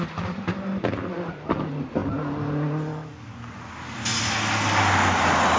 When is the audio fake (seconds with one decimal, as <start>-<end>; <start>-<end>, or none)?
none